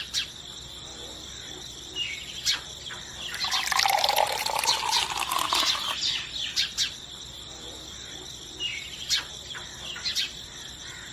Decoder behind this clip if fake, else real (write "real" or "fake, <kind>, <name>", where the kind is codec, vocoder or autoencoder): fake, vocoder, BigVGAN v2